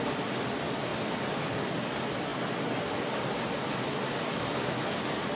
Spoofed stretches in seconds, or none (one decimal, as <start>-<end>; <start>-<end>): none